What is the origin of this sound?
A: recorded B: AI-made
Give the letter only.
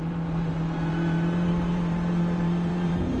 B